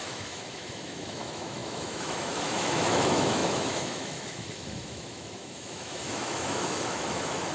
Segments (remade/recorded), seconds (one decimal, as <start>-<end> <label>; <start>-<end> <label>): 0.0-7.5 remade